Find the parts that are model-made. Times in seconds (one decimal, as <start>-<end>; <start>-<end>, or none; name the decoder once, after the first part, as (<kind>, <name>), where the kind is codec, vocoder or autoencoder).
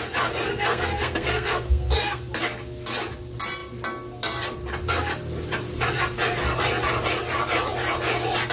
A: 0.5-2.2 (codec, SNAC)